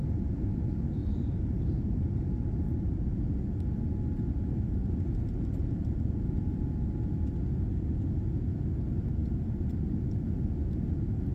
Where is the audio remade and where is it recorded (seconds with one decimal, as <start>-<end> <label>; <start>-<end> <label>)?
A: 0.0-1.0 recorded; 1.0-3.2 remade; 3.2-4.8 recorded; 4.8-6.6 remade; 6.6-11.3 recorded